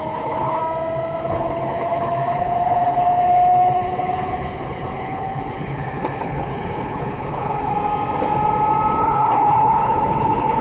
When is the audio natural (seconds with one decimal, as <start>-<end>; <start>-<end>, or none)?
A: 0.6-1.2; 7.7-9.0